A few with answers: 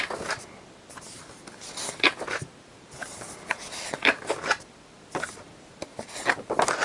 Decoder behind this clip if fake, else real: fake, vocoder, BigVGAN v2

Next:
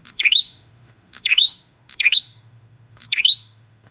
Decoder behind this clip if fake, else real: fake, autoencoder, DAC-VAE